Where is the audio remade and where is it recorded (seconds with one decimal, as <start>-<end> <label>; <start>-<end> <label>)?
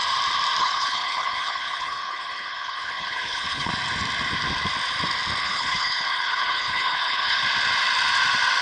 0.0-0.6 recorded; 0.6-3.7 remade; 3.7-5.4 recorded; 5.4-7.4 remade; 7.4-8.6 recorded